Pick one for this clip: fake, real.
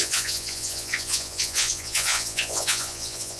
fake